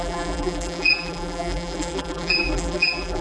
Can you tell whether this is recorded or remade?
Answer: remade